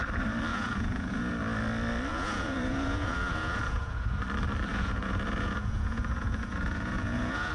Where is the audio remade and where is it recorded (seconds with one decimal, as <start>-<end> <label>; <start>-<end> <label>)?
0.0-0.5 recorded; 0.5-1.3 remade; 1.3-2.1 recorded; 2.1-4.2 remade; 4.2-4.7 recorded; 4.7-7.5 remade